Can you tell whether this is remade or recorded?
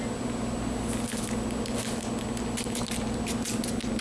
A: recorded